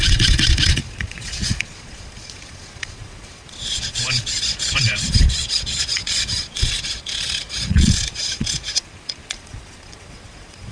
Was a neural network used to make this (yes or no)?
yes